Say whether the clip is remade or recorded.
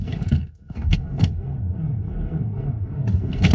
remade